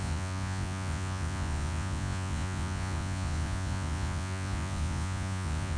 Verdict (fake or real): fake